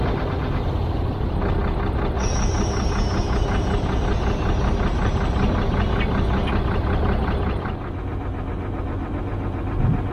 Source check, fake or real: real